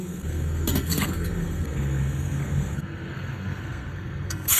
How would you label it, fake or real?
fake